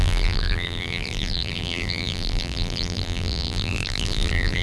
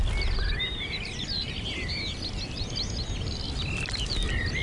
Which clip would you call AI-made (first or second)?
first